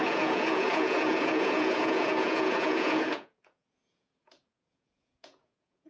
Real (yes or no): no